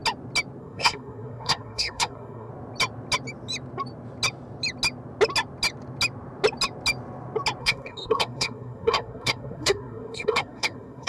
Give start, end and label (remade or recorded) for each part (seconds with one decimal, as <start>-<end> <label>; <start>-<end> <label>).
0.0-0.6 recorded; 0.6-2.5 remade; 2.5-7.6 recorded; 7.6-11.1 remade